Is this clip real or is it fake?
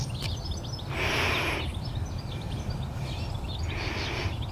real